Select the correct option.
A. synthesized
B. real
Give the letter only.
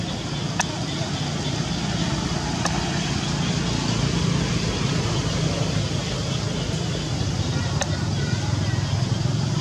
B